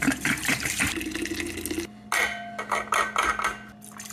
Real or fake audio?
real